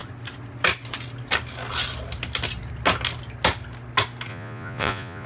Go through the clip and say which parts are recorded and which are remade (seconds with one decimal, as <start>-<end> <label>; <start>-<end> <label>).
0.0-4.3 recorded; 4.3-5.3 remade